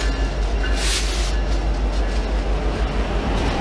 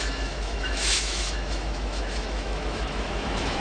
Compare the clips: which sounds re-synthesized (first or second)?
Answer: second